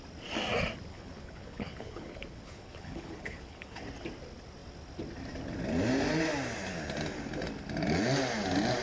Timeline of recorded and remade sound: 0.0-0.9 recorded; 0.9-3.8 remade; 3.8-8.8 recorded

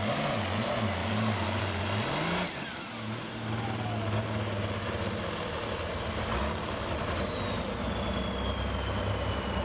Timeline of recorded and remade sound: 0.0-9.6 recorded